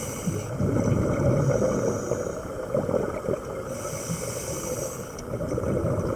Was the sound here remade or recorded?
recorded